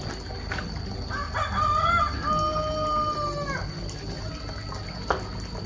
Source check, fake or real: real